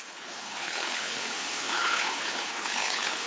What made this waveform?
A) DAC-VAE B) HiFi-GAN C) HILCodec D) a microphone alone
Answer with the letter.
C